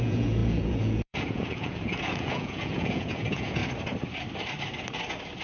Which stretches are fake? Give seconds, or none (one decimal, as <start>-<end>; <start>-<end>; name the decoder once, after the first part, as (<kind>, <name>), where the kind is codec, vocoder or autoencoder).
0.0-3.6 (vocoder, Vocos)